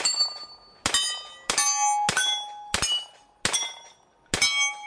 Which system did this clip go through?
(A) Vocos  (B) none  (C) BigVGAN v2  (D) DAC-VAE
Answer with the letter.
B